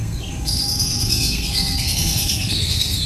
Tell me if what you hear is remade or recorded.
remade